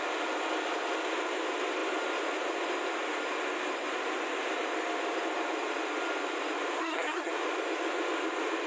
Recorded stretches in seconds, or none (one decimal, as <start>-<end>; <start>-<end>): 0.0-6.8; 7.3-8.7

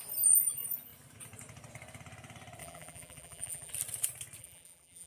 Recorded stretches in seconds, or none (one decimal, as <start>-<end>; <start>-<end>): 0.0-2.6; 3.7-4.4

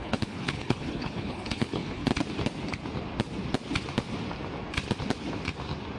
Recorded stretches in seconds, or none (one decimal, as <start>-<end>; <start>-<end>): 2.1-6.0

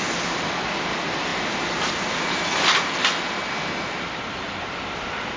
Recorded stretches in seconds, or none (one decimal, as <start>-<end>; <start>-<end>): 0.0-5.4

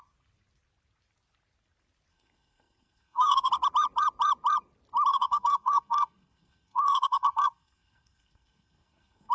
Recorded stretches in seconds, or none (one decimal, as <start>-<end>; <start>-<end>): 0.0-2.1; 3.5-5.1

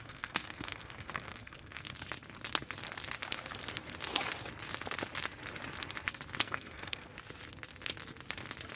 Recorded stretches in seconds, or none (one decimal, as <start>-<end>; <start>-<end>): 1.9-6.4; 7.1-8.8

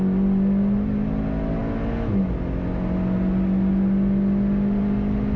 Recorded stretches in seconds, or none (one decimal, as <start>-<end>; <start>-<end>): 0.0-5.4